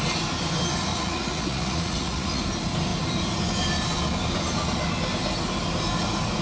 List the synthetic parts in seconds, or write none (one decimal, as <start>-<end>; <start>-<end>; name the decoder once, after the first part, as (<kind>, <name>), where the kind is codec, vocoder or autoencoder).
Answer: 0.9-2.4 (vocoder, Vocos)